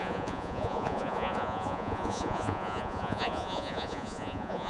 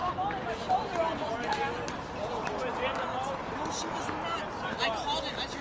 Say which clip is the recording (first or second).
second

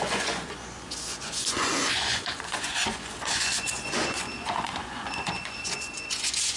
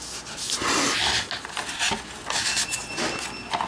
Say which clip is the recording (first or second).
second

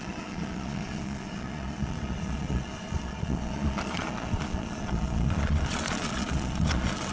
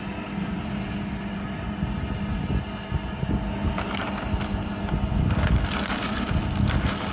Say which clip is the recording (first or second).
second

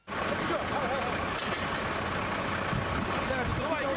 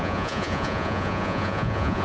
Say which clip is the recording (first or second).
first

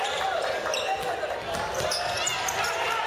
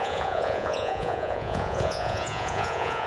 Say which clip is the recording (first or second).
first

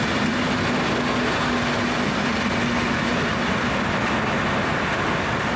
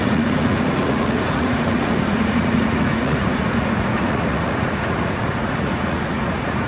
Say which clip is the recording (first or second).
first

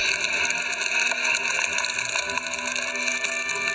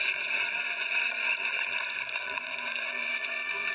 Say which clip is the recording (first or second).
first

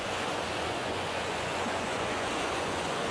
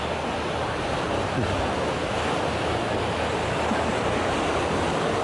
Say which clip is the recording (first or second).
second